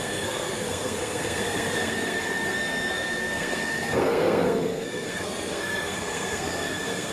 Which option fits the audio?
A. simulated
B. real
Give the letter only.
A